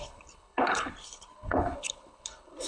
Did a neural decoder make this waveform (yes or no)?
yes